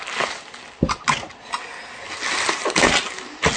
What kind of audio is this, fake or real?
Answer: real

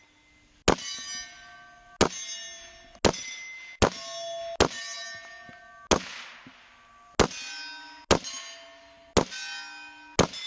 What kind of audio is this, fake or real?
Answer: real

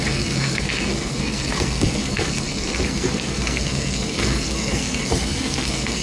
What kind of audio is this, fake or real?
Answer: fake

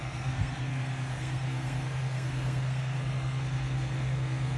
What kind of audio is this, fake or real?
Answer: fake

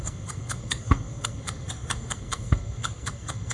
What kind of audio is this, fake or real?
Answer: fake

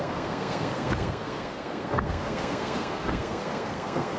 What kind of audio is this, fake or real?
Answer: fake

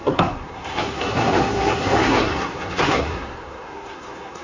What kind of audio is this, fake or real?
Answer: fake